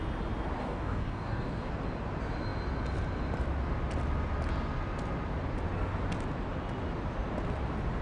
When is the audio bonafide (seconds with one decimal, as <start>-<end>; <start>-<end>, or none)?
0.0-0.6; 1.7-8.0